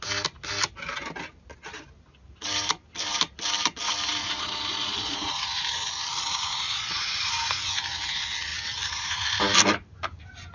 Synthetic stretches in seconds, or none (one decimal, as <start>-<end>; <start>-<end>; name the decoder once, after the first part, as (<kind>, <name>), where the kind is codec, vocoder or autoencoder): 4.2-5.3 (vocoder, Vocos); 6.2-7.2

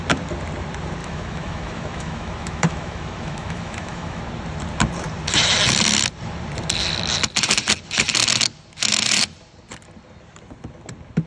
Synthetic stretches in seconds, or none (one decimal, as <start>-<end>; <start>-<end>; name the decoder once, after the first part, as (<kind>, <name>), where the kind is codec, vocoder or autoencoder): 1.0-4.2 (autoencoder, DAC-VAE)